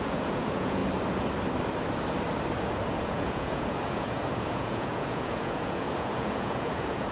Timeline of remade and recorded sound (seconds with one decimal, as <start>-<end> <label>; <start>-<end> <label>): 0.0-0.8 remade; 0.8-3.0 recorded; 3.0-7.1 remade